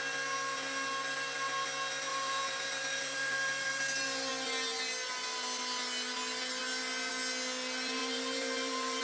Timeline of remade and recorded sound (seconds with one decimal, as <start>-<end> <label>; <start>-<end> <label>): 0.0-2.1 recorded; 2.1-4.3 remade; 4.3-8.0 recorded; 8.0-9.0 remade

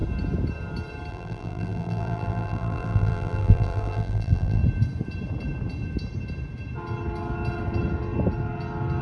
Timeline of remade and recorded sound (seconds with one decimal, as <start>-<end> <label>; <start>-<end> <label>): 0.0-1.1 recorded; 1.1-4.6 remade; 4.6-9.0 recorded

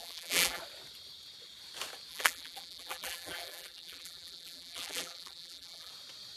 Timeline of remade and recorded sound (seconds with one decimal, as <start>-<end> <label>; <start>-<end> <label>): 0.0-0.6 remade; 0.6-2.1 recorded; 2.1-5.9 remade; 5.9-6.4 recorded